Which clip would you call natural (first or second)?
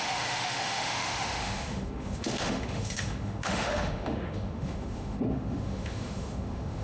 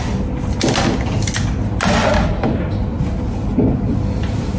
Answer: second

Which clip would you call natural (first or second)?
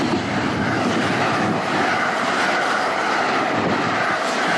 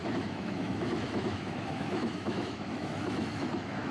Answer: first